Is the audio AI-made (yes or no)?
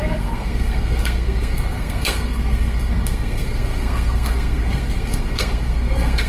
yes